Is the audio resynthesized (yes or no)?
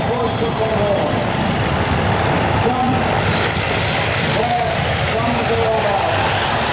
yes